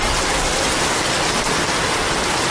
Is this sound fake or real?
real